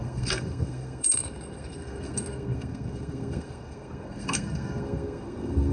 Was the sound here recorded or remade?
remade